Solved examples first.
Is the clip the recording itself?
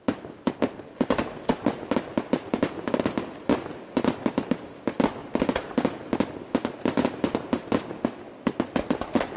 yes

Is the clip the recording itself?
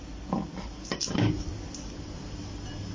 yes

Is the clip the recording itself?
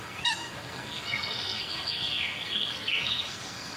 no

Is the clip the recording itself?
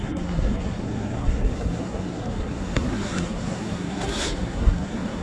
no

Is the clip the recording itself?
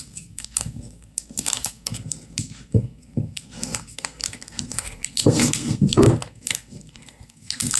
no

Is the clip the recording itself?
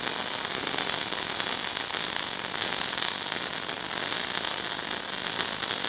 yes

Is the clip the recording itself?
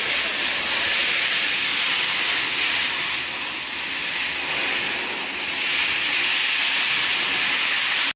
yes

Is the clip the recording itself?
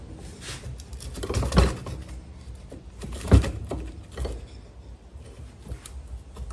yes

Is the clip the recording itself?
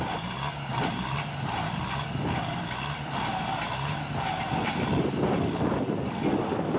yes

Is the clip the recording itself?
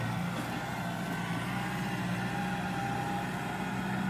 yes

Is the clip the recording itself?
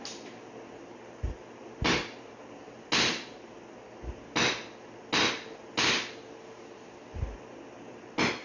yes